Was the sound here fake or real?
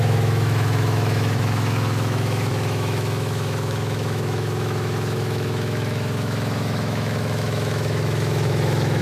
fake